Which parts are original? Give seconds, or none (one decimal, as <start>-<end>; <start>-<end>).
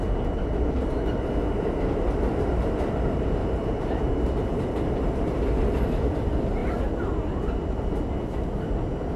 0.0-3.4; 4.1-9.2